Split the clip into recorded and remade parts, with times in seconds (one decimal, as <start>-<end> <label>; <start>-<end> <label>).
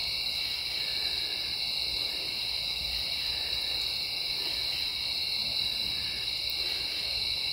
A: 0.0-2.3 remade; 2.3-7.5 recorded